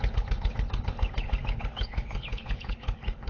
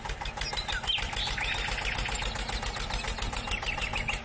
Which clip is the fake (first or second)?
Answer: first